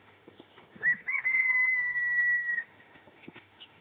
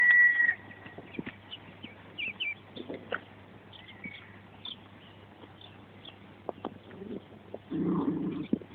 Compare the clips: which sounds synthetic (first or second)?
first